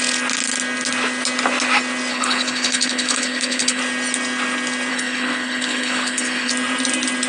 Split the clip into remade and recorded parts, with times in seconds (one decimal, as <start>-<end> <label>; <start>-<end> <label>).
0.0-2.1 recorded; 2.1-3.8 remade; 3.8-4.9 recorded; 4.9-6.5 remade; 6.5-7.3 recorded